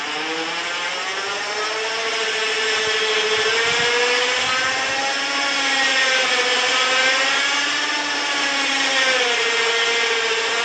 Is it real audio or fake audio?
real